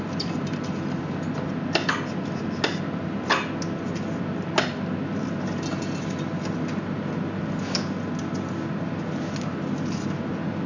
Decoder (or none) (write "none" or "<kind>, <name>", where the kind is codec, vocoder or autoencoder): none